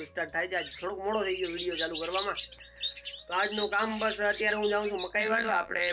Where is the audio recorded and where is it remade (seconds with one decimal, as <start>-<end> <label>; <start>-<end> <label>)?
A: 0.0-5.2 recorded; 5.2-5.9 remade